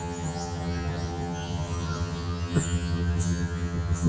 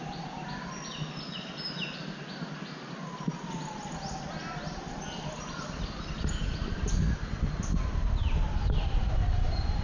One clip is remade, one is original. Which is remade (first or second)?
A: first